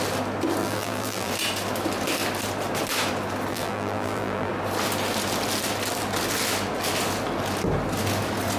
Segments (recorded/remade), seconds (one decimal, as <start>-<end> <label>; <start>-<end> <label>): 0.0-0.6 recorded; 0.6-1.3 remade; 1.3-3.5 recorded; 3.5-4.5 remade; 4.5-8.6 recorded